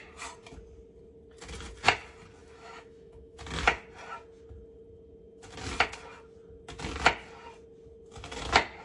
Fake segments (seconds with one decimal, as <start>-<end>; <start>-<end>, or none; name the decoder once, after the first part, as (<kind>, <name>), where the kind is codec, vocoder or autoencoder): 2.4-3.4 (autoencoder, DAC-VAE)